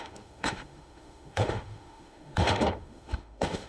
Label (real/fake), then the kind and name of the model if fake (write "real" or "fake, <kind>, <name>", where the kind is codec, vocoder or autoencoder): fake, autoencoder, DAC-VAE